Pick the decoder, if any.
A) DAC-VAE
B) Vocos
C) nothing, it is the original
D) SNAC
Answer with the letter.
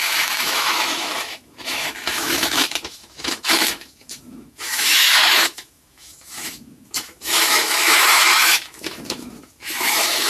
A